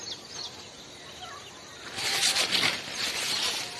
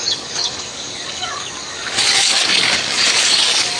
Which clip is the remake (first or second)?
second